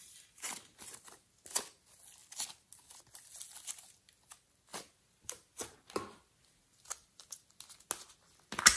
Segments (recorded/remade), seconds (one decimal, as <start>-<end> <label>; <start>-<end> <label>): 0.0-8.8 recorded